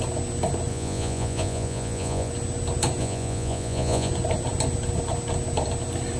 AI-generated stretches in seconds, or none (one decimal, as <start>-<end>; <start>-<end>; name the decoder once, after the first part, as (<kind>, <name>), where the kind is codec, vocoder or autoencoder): 0.7-2.3 (vocoder, Vocos); 3.0-4.1